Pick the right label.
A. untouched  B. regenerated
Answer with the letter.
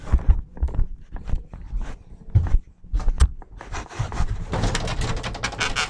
A